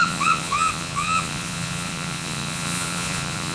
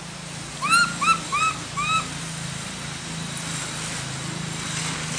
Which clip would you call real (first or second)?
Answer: second